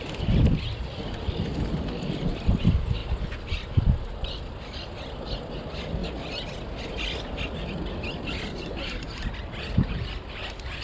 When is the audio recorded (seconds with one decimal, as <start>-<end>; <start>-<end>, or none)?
0.0-10.8